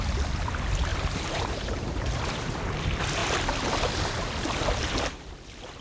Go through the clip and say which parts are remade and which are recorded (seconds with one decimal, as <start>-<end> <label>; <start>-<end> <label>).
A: 0.0-0.9 recorded; 0.9-2.6 remade; 2.6-5.8 recorded